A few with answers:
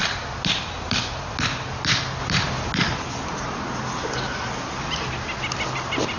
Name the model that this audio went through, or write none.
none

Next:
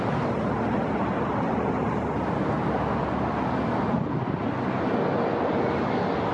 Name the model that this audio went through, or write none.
none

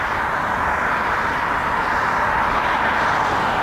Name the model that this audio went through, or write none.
none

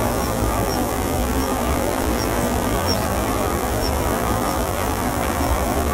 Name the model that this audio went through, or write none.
vocoder, BigVGAN v2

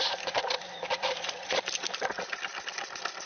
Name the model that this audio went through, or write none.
vocoder, BigVGAN v2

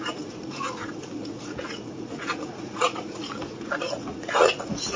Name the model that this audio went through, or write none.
vocoder, Vocos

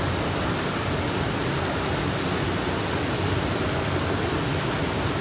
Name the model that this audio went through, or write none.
none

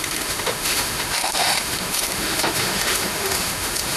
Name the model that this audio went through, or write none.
autoencoder, DAC-VAE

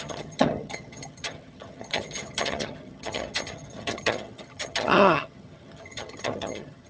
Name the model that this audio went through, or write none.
vocoder, HiFi-GAN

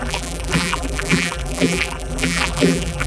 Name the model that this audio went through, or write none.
vocoder, BigVGAN v2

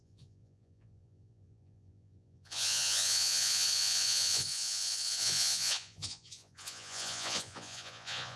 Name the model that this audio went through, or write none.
vocoder, Vocos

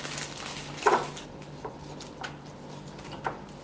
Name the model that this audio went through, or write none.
none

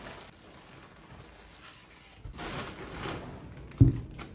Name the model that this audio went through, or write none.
none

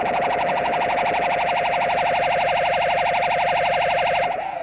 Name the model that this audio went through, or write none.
none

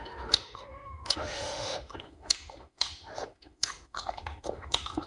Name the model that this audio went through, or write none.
autoencoder, DAC-VAE